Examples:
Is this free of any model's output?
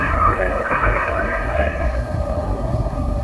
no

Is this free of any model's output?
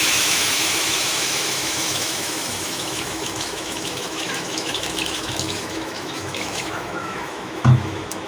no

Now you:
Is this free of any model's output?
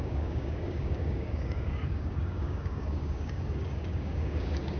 no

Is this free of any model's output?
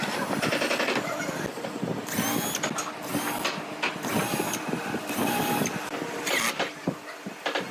yes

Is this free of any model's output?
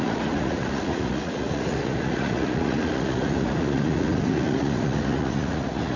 no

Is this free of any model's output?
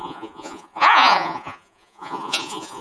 no